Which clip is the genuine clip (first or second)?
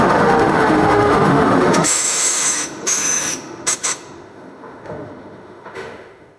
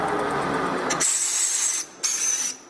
second